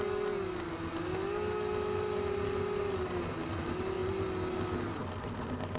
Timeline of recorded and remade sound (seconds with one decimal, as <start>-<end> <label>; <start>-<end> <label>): 0.0-5.8 recorded